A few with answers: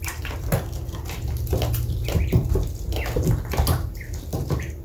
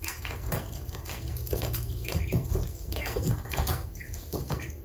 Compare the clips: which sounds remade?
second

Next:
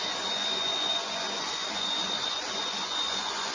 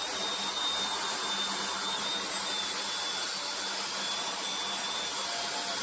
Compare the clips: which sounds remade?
first